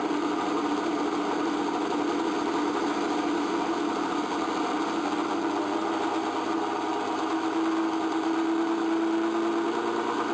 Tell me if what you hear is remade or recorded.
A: recorded